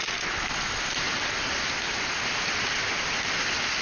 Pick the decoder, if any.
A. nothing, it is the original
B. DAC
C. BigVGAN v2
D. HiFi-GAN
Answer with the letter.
A